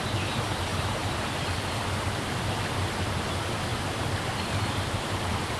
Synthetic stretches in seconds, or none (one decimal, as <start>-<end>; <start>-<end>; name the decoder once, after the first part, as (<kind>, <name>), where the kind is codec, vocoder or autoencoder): 0.7-1.3 (vocoder, BigVGAN v2)